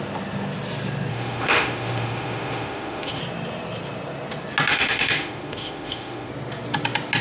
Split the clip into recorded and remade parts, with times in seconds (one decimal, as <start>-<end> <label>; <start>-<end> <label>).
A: 0.0-1.1 recorded; 1.1-3.2 remade; 3.2-4.7 recorded; 4.7-6.3 remade; 6.3-7.2 recorded